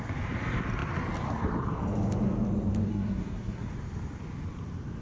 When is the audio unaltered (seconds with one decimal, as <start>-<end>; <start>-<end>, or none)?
0.0-2.9; 3.7-5.0